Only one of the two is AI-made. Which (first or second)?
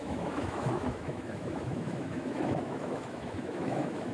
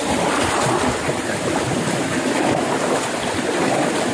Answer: first